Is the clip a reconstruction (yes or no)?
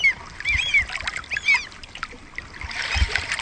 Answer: no